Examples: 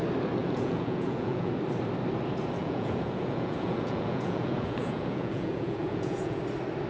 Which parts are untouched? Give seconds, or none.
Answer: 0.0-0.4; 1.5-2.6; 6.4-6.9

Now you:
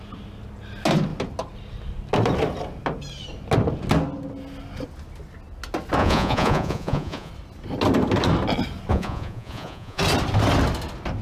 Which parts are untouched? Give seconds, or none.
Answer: 0.0-6.0; 7.3-8.9; 10.0-11.2

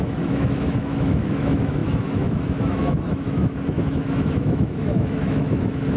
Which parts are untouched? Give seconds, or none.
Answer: none